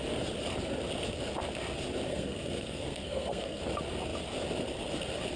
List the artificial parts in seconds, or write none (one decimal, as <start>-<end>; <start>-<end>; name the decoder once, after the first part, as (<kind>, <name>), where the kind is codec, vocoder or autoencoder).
2.1-3.6 (codec, SNAC)